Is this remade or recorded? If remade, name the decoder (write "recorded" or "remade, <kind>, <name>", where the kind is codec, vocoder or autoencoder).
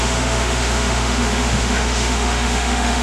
remade, autoencoder, DAC-VAE